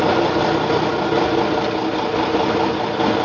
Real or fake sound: real